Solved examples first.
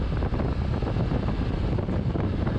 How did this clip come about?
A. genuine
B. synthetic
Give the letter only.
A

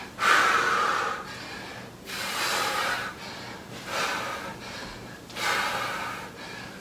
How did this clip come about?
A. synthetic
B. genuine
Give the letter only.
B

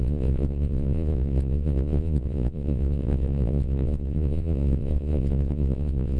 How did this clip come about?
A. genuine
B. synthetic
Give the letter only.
B